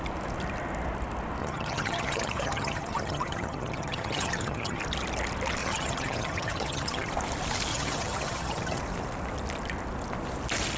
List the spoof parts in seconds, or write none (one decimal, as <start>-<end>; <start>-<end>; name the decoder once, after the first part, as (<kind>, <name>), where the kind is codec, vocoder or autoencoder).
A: 1.4-4.8 (vocoder, HiFi-GAN); 5.6-7.1; 7.7-8.8